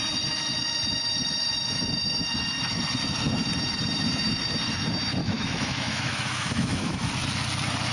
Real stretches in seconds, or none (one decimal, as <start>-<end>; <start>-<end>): 0.0-5.2; 7.1-7.9